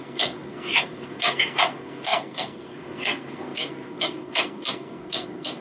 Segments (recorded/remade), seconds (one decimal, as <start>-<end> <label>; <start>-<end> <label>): 0.0-5.6 remade